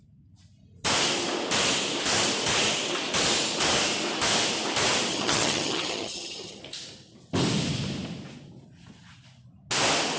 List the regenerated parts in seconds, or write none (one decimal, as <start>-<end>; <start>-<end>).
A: 5.1-6.6

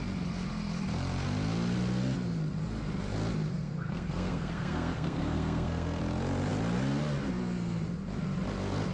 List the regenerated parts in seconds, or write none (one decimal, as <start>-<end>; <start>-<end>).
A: 3.5-6.0

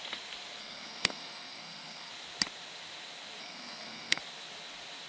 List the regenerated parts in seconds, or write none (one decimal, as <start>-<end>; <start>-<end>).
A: 0.6-2.1; 3.4-4.2